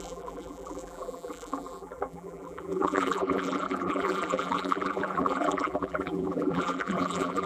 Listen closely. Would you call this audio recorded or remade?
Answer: remade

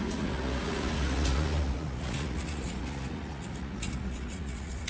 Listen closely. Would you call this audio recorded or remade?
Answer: remade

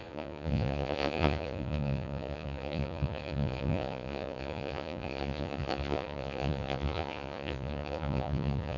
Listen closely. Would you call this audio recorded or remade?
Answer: remade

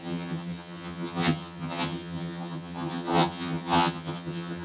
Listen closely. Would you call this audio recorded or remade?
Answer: remade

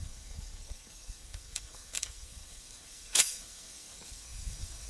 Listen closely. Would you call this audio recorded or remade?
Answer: remade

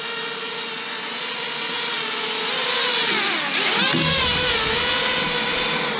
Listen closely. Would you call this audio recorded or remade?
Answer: recorded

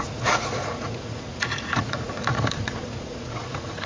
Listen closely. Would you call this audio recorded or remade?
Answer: remade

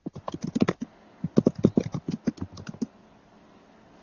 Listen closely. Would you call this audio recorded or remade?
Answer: recorded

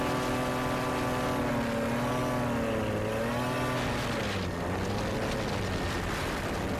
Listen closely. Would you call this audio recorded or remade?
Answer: recorded